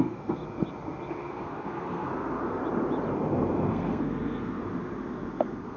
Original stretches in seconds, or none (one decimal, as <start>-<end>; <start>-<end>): 0.4-1.1; 2.6-3.7; 4.6-5.3